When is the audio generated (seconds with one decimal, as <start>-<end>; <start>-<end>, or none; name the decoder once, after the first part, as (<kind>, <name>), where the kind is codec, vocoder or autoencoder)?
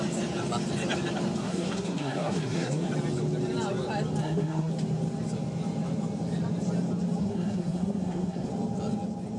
1.4-2.9 (codec, SNAC); 4.2-4.7; 7.2-8.5